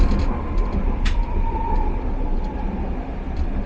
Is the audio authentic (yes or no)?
yes